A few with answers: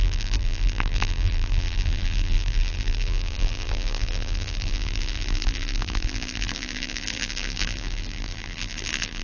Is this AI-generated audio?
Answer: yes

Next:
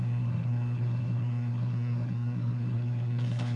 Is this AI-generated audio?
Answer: yes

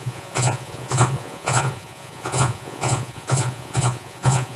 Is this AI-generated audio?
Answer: yes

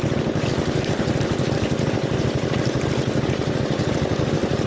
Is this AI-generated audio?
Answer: yes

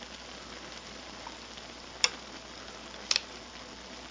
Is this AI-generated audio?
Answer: no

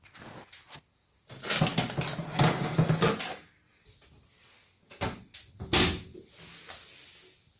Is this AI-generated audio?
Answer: no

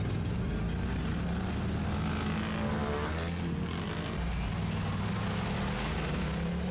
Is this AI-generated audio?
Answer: no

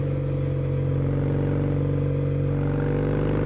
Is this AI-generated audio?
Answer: no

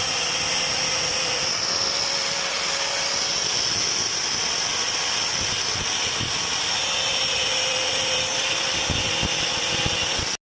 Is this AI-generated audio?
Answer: no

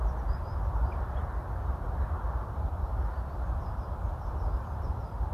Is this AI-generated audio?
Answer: yes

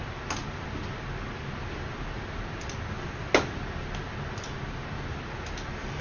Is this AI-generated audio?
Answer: no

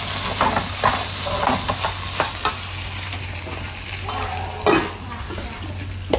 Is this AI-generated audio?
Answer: no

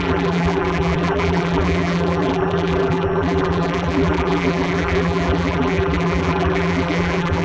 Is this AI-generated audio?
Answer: yes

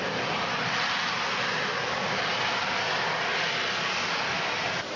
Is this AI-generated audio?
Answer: no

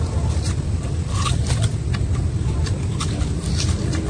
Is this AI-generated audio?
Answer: no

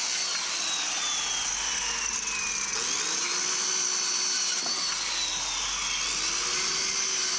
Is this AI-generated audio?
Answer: no